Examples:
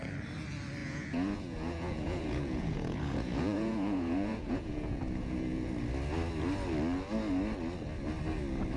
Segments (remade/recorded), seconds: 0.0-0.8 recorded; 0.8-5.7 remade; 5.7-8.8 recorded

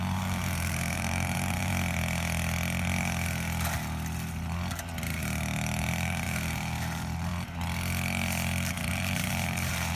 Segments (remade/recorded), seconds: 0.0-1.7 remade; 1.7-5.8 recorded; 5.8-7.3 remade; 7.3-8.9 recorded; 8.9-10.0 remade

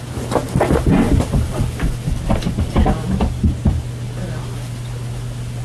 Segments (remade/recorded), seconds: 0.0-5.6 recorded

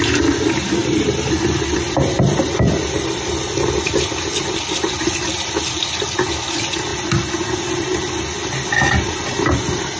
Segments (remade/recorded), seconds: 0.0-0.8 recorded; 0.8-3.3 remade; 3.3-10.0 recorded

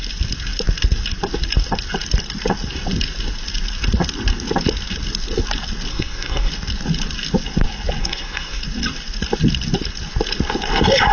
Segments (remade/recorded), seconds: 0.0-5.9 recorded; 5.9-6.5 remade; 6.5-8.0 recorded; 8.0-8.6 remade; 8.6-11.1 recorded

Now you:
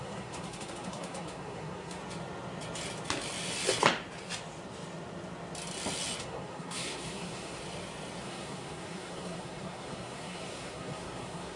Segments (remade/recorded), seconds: 0.0-2.0 remade; 2.0-6.2 recorded; 6.2-7.6 remade; 7.6-8.2 recorded; 8.2-11.6 remade